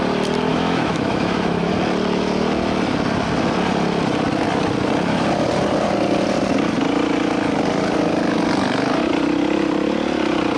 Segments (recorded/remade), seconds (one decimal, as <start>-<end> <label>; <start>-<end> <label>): 0.0-0.5 recorded; 0.5-1.7 remade; 1.7-10.6 recorded